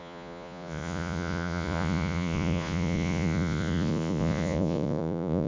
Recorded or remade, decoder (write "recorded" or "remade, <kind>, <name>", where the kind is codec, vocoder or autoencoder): remade, vocoder, Vocos